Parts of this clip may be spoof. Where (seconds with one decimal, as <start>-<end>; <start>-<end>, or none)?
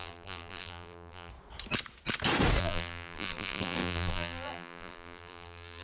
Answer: 0.0-1.3; 2.6-5.8